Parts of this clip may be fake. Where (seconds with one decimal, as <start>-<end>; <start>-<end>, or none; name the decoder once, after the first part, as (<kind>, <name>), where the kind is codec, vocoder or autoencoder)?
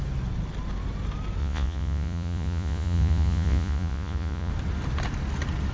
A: 1.4-4.5 (vocoder, Vocos)